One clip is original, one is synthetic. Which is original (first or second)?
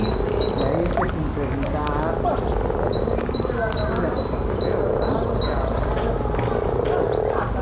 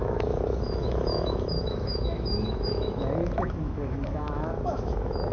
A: first